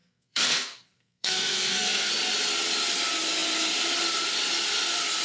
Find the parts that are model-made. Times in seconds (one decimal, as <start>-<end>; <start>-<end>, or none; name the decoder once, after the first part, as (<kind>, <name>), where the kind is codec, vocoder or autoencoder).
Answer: 0.0-2.1 (codec, SNAC)